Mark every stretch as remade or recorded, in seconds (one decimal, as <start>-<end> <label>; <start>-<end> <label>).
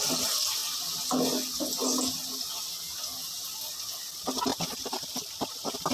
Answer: 0.0-4.5 recorded; 4.5-5.9 remade